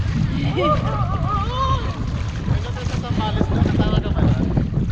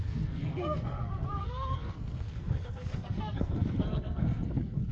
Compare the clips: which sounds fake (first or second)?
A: second